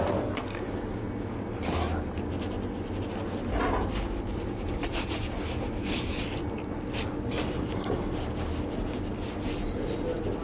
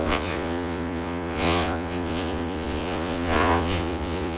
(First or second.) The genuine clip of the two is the first